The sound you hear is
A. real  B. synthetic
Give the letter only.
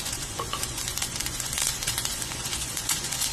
B